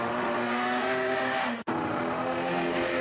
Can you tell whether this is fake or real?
fake